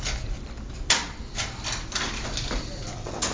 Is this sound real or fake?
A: real